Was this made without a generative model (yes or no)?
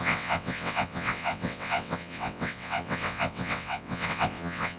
no